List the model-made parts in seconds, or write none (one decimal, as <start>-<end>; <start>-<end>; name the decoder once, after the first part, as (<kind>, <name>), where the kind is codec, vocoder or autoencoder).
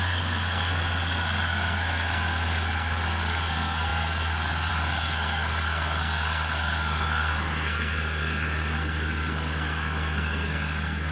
0.0-11.1 (codec, SNAC)